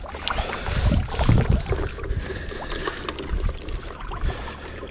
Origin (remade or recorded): recorded